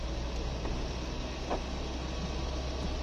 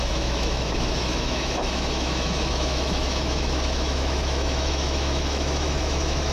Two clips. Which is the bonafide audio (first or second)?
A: first